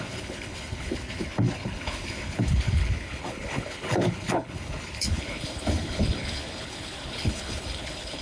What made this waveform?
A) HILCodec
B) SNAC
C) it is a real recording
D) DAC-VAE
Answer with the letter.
A